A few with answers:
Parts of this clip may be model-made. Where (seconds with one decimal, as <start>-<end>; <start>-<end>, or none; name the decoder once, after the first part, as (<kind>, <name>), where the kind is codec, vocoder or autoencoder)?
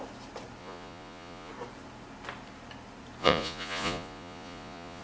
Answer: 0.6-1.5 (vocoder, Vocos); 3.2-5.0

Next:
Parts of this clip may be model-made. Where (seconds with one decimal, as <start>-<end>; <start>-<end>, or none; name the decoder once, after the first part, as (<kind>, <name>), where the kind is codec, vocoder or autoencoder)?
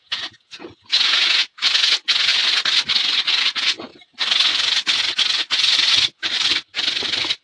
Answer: 0.0-2.3 (vocoder, Vocos); 3.4-3.9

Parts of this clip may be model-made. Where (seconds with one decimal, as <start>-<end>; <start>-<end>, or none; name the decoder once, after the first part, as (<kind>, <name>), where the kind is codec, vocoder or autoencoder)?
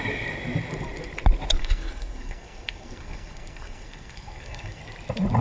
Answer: 1.6-4.8 (codec, SNAC)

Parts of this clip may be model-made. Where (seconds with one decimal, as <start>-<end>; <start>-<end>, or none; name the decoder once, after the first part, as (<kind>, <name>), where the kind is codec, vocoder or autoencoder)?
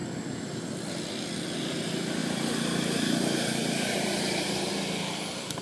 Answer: 2.2-4.7 (vocoder, BigVGAN v2)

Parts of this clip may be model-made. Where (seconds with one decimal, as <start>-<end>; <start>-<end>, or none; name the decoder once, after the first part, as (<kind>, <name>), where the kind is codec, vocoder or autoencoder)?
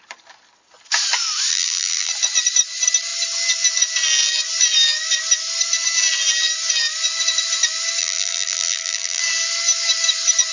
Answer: 1.5-2.1 (vocoder, BigVGAN v2); 8.0-9.2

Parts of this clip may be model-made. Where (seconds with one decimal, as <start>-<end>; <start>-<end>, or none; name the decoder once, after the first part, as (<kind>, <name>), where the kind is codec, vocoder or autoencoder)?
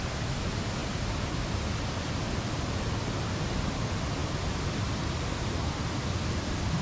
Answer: none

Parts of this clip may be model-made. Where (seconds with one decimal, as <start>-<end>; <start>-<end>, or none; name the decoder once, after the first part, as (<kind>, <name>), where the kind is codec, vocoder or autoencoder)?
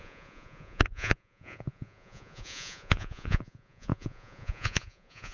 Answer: 0.0-5.3 (vocoder, Vocos)